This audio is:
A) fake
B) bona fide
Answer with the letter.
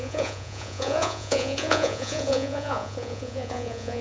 A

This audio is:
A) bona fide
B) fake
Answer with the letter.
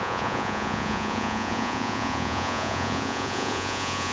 B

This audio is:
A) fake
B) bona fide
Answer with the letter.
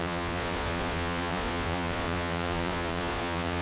A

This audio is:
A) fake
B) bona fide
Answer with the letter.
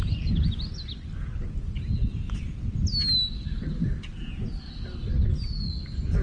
B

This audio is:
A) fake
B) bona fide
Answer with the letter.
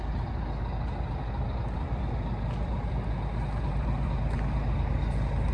B